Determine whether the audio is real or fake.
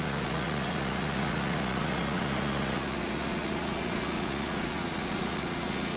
fake